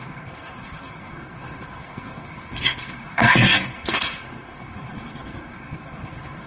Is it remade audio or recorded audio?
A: remade